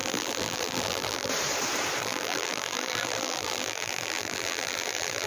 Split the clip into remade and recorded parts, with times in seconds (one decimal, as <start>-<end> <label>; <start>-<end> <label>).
0.0-1.3 remade; 1.3-2.0 recorded; 2.0-5.3 remade